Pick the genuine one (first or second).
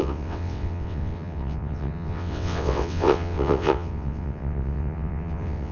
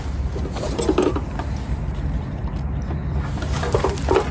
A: second